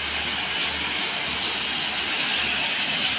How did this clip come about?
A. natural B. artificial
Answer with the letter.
A